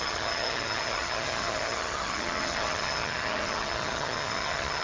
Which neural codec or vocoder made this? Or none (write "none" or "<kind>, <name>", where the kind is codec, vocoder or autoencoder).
vocoder, HiFi-GAN